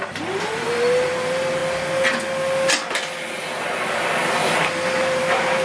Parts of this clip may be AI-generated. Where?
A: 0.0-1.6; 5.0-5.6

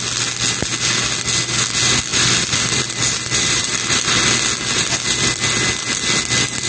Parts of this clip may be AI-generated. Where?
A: 2.1-4.9

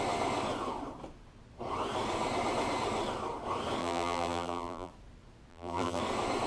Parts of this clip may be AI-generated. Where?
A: 3.8-4.9; 5.5-6.0

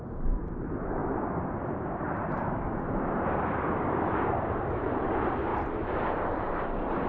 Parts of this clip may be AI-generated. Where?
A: 0.0-7.1

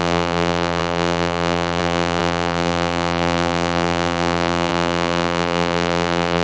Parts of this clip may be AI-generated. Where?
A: 0.0-6.4

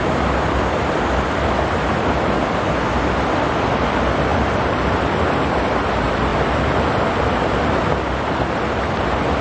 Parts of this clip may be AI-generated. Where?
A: 4.3-4.9

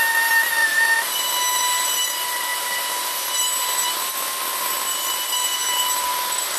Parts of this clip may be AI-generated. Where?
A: none

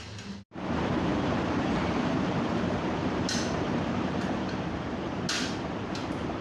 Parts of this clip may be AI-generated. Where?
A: 1.1-2.4; 3.0-5.2